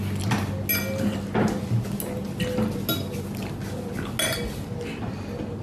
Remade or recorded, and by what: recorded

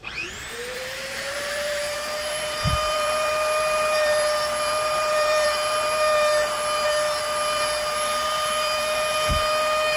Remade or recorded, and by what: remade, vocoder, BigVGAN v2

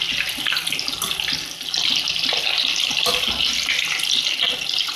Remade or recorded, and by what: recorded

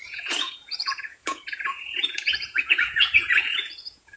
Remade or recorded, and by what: remade, vocoder, Vocos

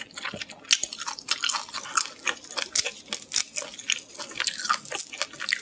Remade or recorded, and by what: recorded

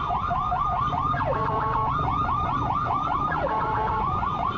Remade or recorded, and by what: remade, vocoder, Vocos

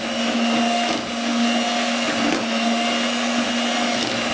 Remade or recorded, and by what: recorded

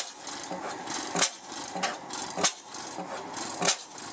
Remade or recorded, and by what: recorded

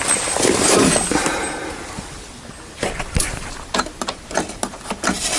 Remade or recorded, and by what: recorded